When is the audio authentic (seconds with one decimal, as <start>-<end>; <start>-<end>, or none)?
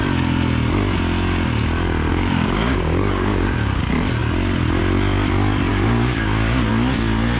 0.0-2.1; 3.8-5.7; 6.7-7.4